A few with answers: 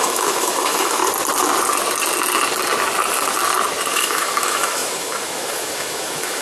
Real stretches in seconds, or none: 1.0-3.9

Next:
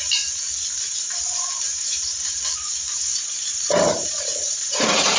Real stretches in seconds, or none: 0.0-1.7; 2.4-3.1

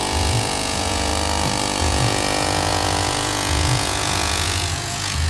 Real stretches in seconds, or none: 1.1-1.8